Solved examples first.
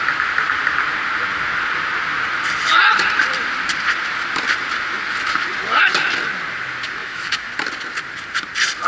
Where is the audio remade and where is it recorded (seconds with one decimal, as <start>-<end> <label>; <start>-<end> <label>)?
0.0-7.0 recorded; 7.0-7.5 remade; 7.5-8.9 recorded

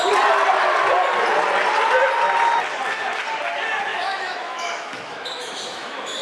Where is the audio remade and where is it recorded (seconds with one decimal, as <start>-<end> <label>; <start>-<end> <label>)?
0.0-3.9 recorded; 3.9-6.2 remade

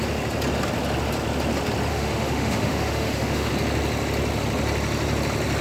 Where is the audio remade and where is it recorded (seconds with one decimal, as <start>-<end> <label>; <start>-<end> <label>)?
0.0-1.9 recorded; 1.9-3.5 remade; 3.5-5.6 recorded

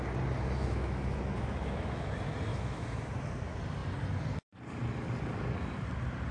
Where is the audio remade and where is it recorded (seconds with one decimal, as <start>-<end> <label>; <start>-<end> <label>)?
0.0-0.6 recorded; 0.6-2.1 remade; 2.1-2.5 recorded; 2.5-3.1 remade; 3.1-6.3 recorded

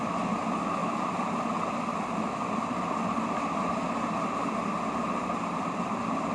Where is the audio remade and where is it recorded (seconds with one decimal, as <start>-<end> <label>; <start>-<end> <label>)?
0.0-6.3 recorded

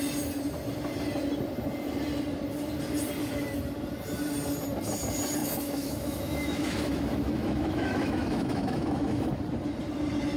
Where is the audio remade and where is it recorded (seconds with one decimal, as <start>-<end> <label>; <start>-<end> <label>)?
0.0-5.4 recorded; 5.4-9.3 remade; 9.3-10.4 recorded

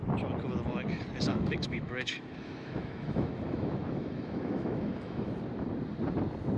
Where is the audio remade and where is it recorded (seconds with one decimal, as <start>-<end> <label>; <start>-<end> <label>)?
0.0-1.3 recorded; 1.3-5.3 remade; 5.3-6.6 recorded

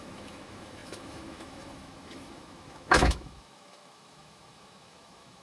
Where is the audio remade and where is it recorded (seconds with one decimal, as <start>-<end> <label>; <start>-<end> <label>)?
0.0-5.4 remade